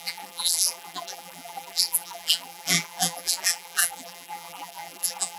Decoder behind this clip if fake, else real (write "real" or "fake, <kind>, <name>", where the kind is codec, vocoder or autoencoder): fake, vocoder, BigVGAN v2